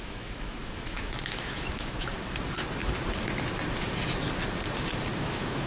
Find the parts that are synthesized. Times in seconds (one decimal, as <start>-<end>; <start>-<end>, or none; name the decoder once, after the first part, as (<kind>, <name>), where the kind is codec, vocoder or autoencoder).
0.0-2.1 (autoencoder, DAC-VAE); 5.2-5.7